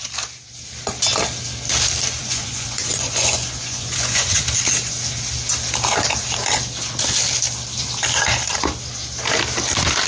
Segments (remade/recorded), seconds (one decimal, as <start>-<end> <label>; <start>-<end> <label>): 0.0-2.2 recorded; 2.2-4.4 remade; 4.4-10.1 recorded